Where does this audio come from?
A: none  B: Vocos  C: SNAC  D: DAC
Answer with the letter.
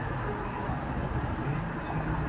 A